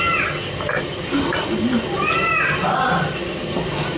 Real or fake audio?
real